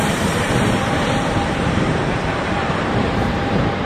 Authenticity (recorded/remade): remade